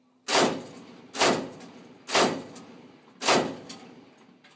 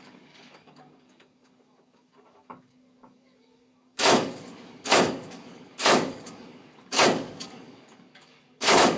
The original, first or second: first